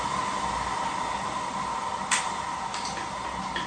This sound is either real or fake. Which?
real